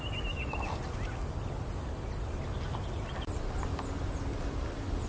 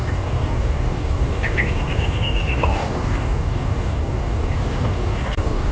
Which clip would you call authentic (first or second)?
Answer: first